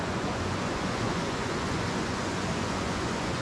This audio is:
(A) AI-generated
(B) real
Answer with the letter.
A